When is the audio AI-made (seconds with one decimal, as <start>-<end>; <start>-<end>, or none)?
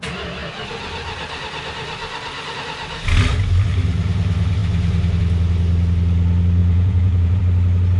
6.6-7.4